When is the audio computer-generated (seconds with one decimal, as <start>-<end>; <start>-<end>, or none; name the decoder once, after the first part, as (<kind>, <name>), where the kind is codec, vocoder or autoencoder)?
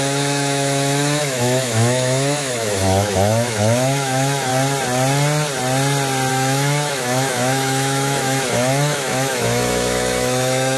0.0-4.5 (autoencoder, DAC-VAE); 6.3-10.8